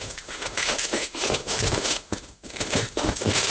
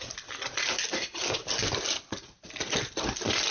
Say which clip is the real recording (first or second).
second